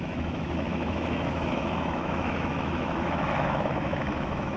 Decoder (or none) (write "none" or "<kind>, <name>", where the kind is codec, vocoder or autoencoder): autoencoder, DAC-VAE